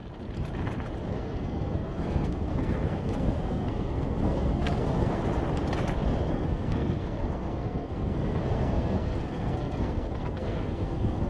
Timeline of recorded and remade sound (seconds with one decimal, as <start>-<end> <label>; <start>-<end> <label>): 0.0-1.1 recorded; 1.1-5.2 remade; 5.2-6.3 recorded; 6.3-11.3 remade